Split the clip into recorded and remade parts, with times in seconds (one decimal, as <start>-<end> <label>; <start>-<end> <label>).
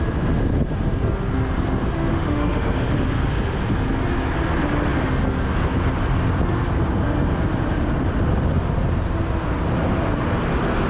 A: 0.0-2.1 recorded; 2.1-2.9 remade; 2.9-10.9 recorded